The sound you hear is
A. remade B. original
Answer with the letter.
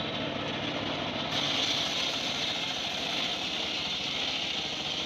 B